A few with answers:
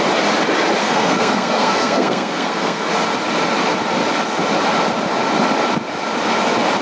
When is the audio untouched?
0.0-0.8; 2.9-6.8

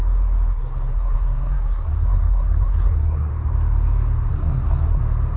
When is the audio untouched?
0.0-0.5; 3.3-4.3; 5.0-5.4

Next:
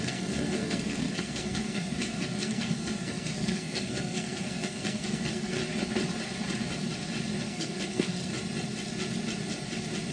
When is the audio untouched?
5.6-7.4; 8.3-10.1